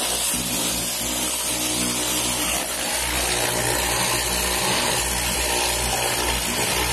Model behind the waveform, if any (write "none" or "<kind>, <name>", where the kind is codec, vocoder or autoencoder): none